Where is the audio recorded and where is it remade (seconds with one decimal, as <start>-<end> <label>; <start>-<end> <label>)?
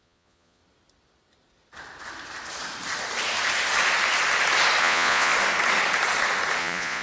0.0-0.6 remade; 0.6-4.8 recorded; 4.8-5.3 remade; 5.3-6.6 recorded; 6.6-7.0 remade